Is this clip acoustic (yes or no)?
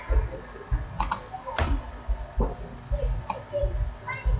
yes